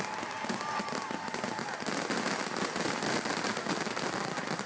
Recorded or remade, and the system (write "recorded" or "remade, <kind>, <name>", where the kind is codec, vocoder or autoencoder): recorded